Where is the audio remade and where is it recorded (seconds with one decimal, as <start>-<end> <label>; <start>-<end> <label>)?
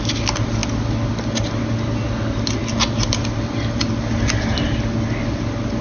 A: 0.0-5.8 recorded